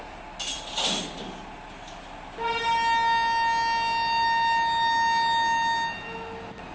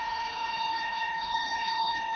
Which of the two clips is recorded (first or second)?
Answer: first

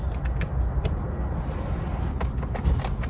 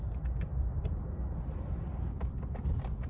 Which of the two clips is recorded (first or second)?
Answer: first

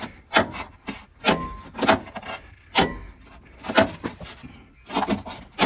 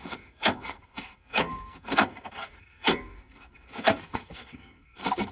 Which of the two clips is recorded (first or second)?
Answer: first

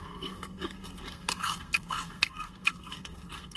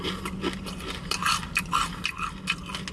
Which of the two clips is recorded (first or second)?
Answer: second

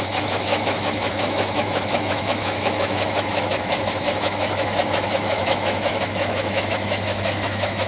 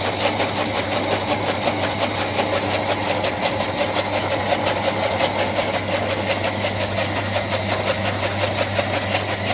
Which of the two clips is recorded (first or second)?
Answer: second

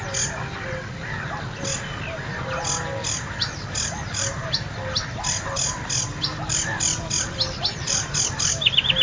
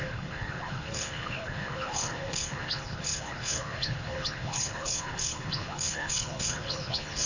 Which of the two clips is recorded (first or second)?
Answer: first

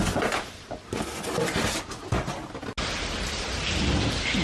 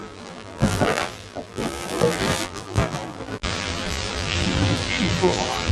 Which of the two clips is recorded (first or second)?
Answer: first